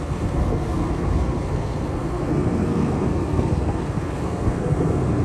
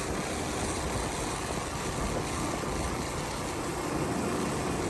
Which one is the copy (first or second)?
first